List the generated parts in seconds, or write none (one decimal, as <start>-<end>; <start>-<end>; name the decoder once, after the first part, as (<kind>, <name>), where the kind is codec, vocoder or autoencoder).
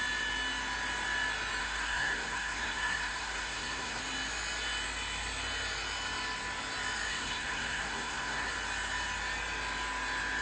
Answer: 1.6-4.0 (codec, SNAC); 7.1-8.5